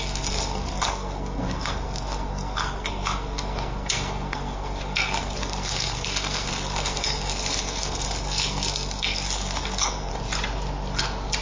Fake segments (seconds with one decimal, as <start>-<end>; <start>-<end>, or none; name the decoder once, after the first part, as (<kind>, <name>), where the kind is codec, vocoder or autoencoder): 0.0-10.1 (codec, SNAC)